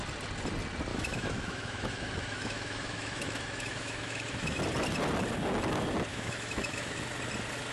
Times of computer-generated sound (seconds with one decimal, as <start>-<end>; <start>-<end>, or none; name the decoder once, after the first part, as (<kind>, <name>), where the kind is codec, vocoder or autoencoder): 0.9-4.6 (autoencoder, DAC-VAE); 6.1-7.0